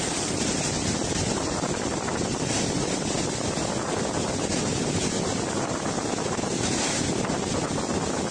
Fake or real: real